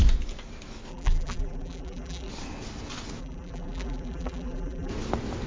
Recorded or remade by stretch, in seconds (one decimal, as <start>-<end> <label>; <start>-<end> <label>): 0.0-0.9 recorded; 0.9-2.3 remade; 2.3-3.2 recorded; 3.2-4.9 remade; 4.9-5.5 recorded